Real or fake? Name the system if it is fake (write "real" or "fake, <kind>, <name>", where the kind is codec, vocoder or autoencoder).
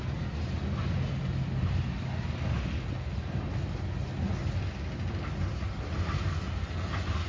real